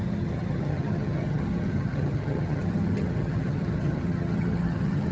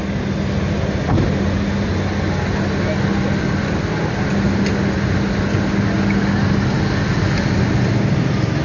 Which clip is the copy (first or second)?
first